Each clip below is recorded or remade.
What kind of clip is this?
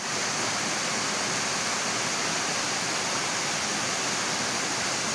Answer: recorded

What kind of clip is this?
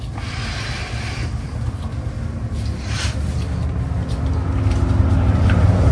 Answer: recorded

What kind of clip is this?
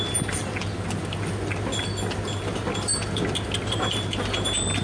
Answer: recorded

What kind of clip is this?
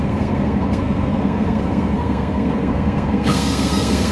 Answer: remade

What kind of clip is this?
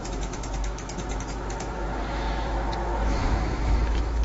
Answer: remade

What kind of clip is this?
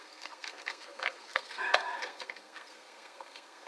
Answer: remade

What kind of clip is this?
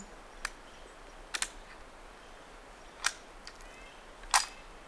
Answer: recorded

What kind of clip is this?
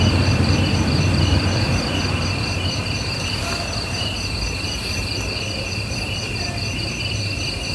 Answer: remade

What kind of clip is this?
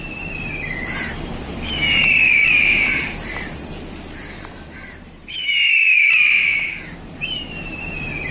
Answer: remade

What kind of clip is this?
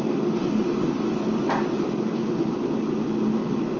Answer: recorded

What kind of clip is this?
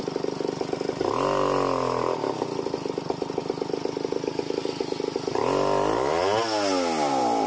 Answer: recorded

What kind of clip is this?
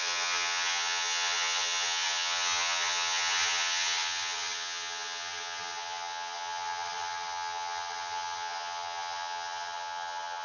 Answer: remade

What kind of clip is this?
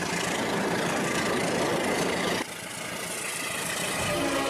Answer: recorded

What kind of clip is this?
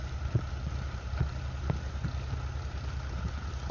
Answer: recorded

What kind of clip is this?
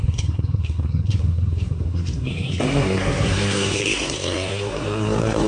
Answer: remade